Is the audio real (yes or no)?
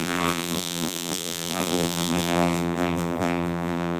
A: no